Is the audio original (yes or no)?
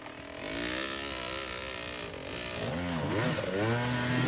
yes